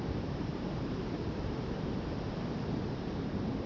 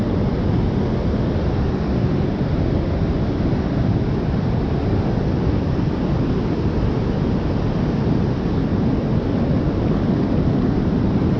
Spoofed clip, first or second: first